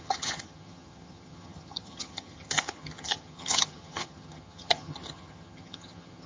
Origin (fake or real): fake